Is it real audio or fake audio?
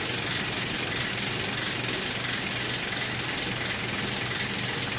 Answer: real